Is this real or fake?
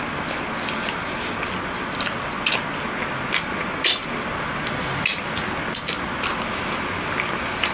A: real